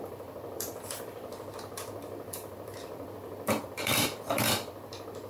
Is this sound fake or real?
fake